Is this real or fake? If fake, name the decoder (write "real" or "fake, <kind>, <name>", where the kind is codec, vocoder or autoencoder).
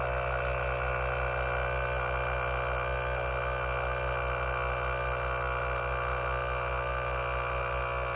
real